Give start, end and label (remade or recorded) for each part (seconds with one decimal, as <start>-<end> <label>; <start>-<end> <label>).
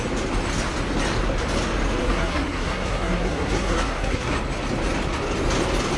0.0-2.0 recorded; 2.0-4.3 remade; 4.3-6.0 recorded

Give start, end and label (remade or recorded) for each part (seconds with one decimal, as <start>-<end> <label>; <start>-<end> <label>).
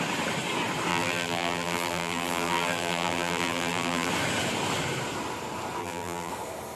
0.0-0.9 recorded; 0.9-4.1 remade; 4.1-5.8 recorded; 5.8-6.3 remade; 6.3-6.8 recorded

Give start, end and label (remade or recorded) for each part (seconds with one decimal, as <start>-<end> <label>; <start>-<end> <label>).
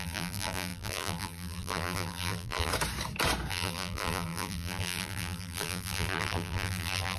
0.0-2.7 remade; 2.7-3.5 recorded; 3.5-7.2 remade